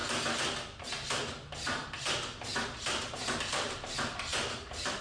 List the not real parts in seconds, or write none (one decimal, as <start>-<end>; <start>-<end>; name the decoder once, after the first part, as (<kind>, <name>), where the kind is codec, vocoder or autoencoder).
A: 3.0-5.0 (vocoder, BigVGAN v2)